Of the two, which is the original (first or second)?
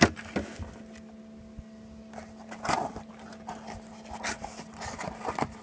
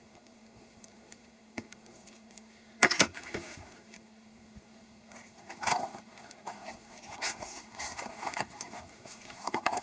first